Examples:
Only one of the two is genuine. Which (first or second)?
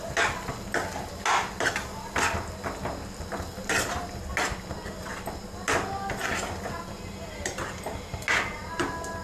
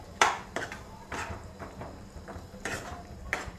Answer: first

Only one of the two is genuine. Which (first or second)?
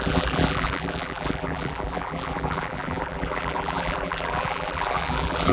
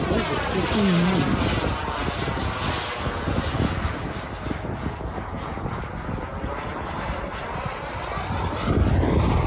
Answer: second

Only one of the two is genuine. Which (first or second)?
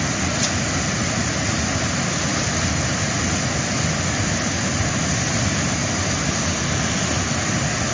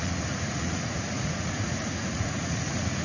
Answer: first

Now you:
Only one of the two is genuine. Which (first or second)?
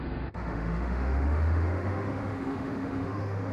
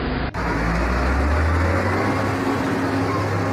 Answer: second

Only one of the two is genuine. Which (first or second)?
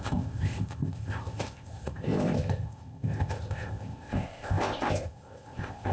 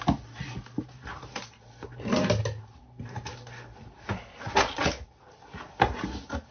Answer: second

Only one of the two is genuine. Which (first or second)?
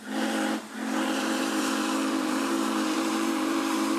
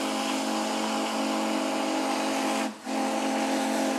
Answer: second